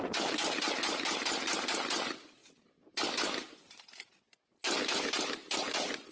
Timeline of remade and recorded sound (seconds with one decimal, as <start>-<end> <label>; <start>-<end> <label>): 0.0-2.4 recorded; 2.4-4.1 remade; 4.1-4.6 recorded; 4.6-6.1 remade